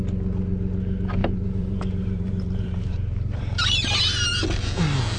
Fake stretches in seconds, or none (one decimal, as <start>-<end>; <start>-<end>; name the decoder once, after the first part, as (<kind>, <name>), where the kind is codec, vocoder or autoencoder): 1.2-4.3 (vocoder, BigVGAN v2)